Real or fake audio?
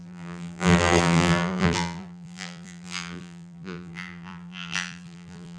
fake